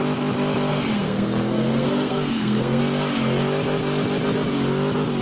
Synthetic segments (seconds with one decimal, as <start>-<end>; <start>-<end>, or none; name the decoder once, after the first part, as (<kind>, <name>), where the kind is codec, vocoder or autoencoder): 0.7-2.8 (codec, SNAC)